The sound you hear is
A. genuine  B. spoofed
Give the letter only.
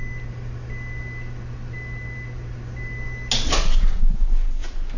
A